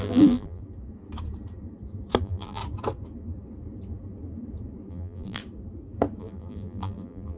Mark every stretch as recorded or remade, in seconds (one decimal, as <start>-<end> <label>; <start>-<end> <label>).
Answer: 0.0-0.6 remade; 0.6-2.2 recorded; 2.2-2.6 remade; 2.6-4.9 recorded; 4.9-5.4 remade; 5.4-6.2 recorded; 6.2-7.4 remade